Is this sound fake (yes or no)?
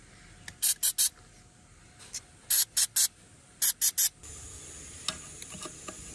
no